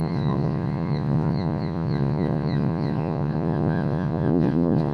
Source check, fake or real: fake